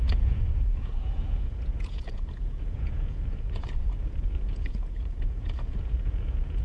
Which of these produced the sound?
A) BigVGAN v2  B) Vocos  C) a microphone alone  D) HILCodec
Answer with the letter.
B